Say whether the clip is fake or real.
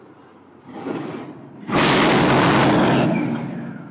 real